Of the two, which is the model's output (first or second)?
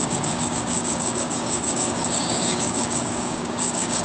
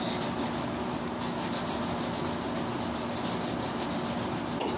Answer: first